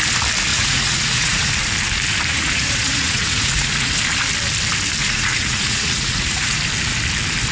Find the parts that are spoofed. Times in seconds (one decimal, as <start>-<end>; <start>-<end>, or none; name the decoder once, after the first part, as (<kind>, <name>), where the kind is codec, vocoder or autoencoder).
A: 0.5-1.5 (vocoder, Vocos); 2.3-3.9; 5.0-6.6